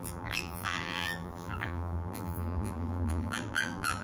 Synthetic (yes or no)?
yes